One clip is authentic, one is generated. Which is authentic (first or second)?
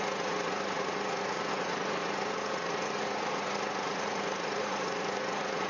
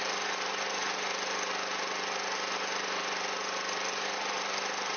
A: second